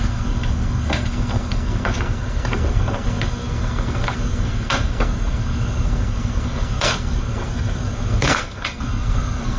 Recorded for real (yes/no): no